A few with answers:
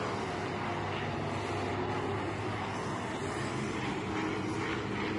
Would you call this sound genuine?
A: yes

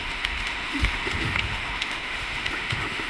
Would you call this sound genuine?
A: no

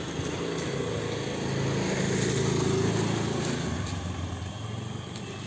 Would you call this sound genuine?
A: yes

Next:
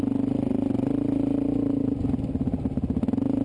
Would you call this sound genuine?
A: yes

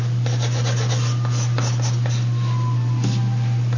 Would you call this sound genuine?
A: yes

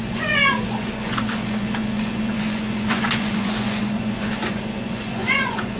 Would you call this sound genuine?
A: no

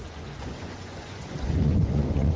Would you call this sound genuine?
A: no